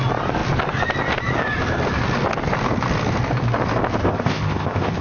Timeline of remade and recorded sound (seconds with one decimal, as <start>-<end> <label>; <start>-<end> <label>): 0.0-4.0 recorded; 4.0-5.0 remade